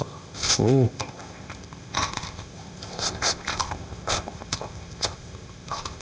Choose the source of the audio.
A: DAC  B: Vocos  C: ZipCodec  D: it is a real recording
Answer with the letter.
C